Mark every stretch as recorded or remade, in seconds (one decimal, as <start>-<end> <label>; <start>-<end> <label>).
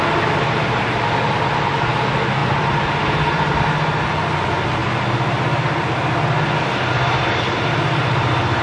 0.0-2.4 recorded; 2.4-3.5 remade; 3.5-8.6 recorded